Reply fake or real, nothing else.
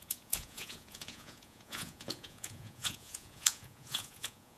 fake